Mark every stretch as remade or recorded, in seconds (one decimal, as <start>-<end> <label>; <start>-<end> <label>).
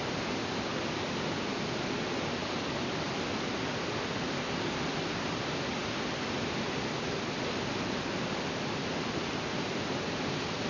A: 0.0-2.4 recorded; 2.4-4.9 remade; 4.9-10.7 recorded